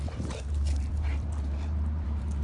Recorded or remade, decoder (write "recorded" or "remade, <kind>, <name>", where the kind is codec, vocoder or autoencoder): remade, vocoder, BigVGAN v2